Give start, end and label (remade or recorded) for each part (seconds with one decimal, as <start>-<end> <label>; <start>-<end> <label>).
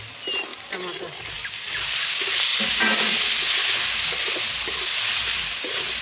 0.0-6.0 recorded